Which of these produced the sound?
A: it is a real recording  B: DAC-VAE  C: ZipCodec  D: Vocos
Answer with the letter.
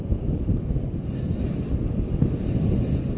A